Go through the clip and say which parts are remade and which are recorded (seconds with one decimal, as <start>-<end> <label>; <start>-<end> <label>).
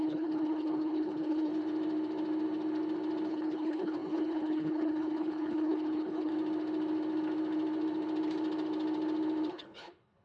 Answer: 0.0-1.5 remade; 1.5-3.3 recorded; 3.3-6.3 remade; 6.3-9.5 recorded; 9.5-10.2 remade